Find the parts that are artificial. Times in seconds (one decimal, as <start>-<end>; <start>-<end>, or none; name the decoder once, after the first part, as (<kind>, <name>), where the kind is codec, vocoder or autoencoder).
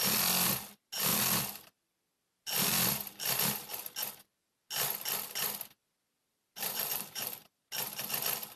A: 6.2-7.6 (vocoder, BigVGAN v2)